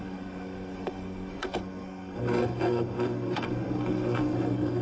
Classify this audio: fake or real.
fake